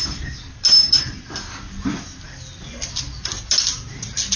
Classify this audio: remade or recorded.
recorded